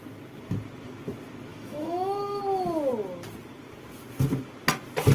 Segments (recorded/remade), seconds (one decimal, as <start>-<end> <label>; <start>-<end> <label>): 0.0-1.5 recorded; 1.5-2.4 remade; 2.4-5.1 recorded